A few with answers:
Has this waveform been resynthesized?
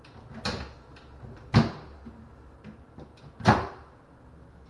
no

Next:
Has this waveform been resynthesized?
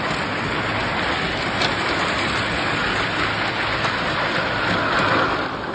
no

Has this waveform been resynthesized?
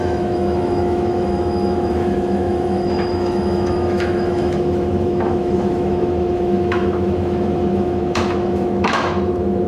yes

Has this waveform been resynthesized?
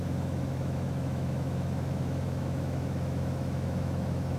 yes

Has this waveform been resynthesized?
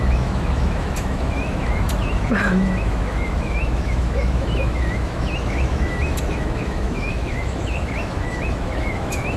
yes